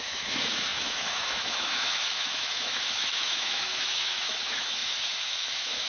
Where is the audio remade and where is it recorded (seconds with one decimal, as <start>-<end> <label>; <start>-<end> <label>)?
0.0-5.9 remade